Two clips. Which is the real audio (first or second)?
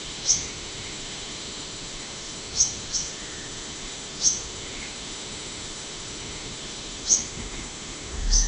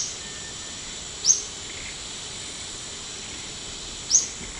second